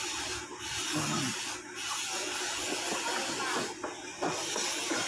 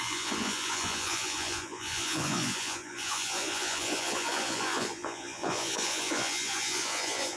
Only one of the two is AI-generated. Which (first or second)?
second